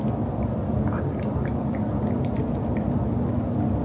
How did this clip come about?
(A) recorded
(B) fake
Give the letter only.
A